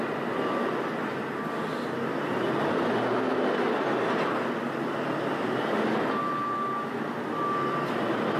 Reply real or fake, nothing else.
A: real